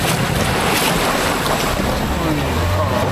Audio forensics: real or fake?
real